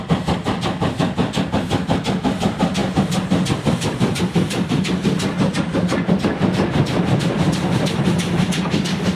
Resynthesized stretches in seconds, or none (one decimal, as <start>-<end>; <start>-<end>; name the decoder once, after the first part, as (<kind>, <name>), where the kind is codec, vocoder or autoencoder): 0.0-9.2 (vocoder, BigVGAN v2)